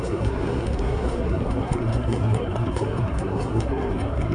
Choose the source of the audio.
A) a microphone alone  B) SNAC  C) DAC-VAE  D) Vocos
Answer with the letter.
B